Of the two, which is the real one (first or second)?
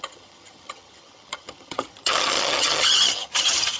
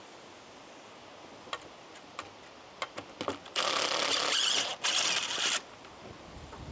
second